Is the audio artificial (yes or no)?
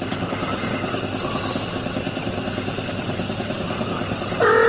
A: no